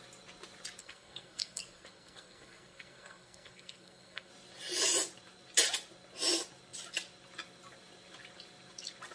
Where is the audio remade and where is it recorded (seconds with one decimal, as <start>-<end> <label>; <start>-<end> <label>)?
0.0-0.8 recorded; 0.8-4.3 remade; 4.3-9.1 recorded